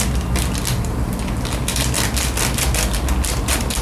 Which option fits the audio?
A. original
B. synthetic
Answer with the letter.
A